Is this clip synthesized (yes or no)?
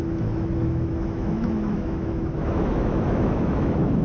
yes